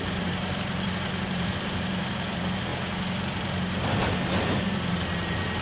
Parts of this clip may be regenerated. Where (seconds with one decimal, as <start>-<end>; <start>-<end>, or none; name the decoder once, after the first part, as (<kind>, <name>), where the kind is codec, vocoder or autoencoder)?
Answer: 0.0-2.7 (vocoder, BigVGAN v2); 4.5-5.6